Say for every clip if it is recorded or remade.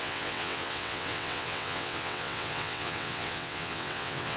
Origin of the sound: remade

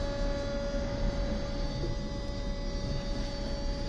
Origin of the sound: recorded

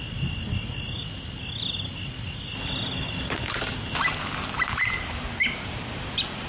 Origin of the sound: recorded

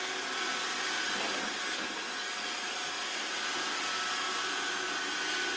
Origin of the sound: recorded